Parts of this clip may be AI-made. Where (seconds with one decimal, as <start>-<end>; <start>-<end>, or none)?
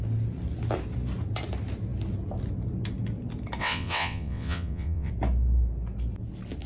3.6-5.1